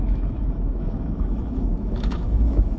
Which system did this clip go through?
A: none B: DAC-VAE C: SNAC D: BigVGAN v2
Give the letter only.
B